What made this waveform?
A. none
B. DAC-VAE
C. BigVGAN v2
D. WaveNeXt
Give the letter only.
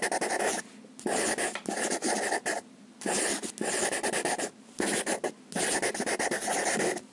A